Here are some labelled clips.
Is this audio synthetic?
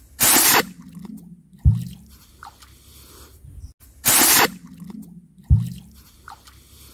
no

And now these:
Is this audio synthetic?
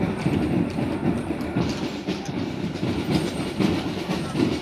no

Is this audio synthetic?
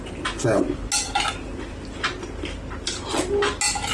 no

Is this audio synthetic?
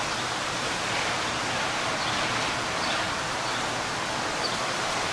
no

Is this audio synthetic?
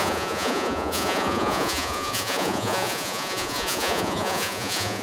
yes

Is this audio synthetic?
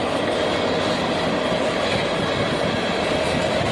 no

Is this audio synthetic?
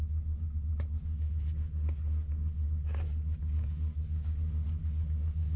no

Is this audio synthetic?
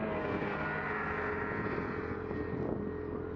no